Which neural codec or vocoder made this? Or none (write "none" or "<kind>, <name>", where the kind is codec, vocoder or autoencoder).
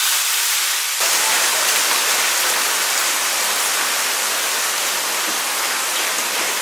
none